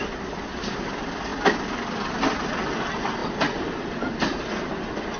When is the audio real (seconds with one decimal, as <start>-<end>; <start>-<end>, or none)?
0.0-5.2